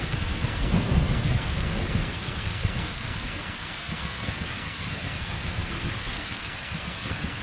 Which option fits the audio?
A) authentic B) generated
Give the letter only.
B